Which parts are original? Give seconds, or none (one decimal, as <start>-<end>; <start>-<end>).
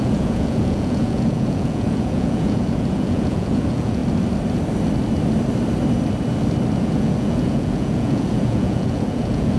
4.0-6.8